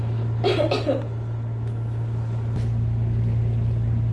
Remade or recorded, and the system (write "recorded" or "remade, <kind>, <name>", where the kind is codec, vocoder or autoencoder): recorded